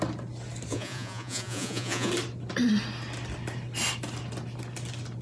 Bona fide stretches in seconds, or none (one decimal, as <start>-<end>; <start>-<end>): 0.0-0.7; 2.1-5.2